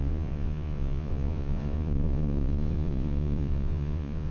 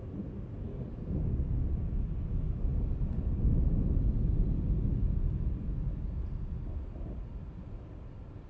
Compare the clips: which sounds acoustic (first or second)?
second